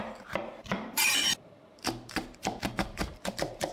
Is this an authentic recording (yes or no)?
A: no